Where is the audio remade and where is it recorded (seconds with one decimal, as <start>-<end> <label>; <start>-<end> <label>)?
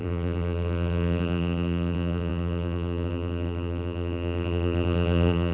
0.0-5.5 remade